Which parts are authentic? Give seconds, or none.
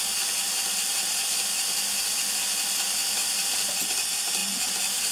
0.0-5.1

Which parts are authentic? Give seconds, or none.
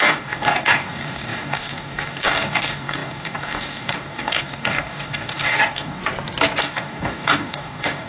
6.0-6.6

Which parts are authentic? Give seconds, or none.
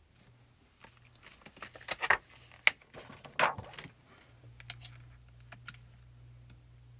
0.0-7.0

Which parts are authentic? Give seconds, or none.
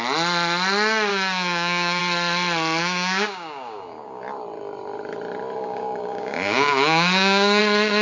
0.0-1.1; 2.0-2.8; 4.2-5.6; 7.6-8.0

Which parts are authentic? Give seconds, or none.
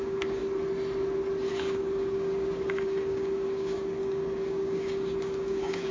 0.4-1.5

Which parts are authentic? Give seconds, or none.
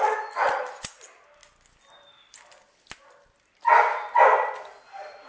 0.0-5.3